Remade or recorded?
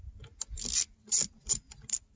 recorded